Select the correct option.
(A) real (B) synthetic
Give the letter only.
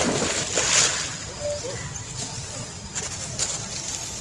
A